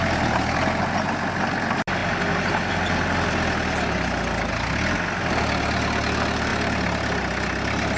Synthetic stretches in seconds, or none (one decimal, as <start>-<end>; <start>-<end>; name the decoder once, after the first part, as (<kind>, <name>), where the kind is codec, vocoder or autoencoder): none